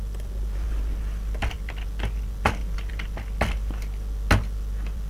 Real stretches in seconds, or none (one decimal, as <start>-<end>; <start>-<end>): 0.0-5.1